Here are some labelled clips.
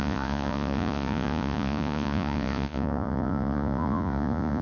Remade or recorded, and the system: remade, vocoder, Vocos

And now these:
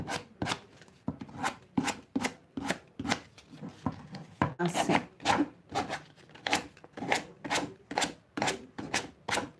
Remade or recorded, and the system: recorded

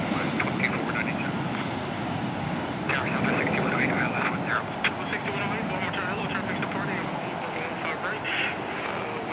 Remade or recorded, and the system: recorded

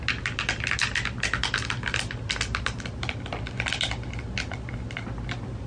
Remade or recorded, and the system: recorded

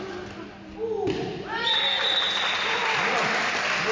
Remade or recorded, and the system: recorded